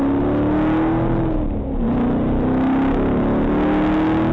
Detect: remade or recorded recorded